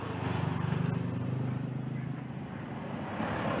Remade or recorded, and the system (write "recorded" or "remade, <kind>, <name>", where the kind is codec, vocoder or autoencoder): recorded